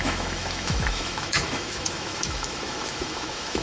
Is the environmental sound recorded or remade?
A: remade